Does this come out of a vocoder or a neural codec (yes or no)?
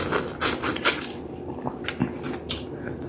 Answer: no